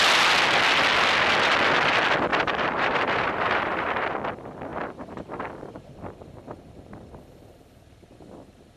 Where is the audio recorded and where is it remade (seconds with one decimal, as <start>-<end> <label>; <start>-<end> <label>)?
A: 0.0-2.3 recorded; 2.3-4.2 remade; 4.2-4.7 recorded; 4.7-5.9 remade; 5.9-8.8 recorded